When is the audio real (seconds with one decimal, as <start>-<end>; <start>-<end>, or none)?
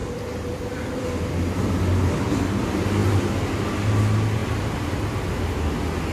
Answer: 2.1-4.4; 5.6-6.1